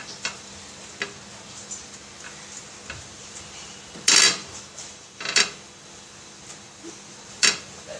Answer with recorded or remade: recorded